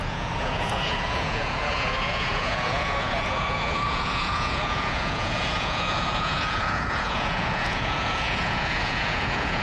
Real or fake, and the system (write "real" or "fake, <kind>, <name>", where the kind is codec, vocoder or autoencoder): fake, vocoder, Vocos